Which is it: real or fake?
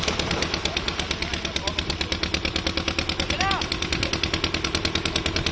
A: real